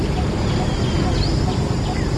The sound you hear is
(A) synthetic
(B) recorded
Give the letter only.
B